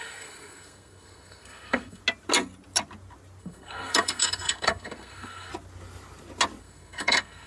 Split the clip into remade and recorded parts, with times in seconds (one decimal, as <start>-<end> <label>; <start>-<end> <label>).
0.0-2.0 remade; 2.0-3.4 recorded; 3.4-5.5 remade; 5.5-6.6 recorded; 6.6-7.5 remade